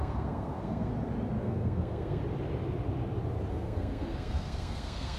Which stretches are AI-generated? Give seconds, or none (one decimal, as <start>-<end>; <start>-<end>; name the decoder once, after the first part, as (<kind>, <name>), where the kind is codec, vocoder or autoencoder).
0.0-0.9 (codec, SNAC); 1.4-2.2; 3.5-5.2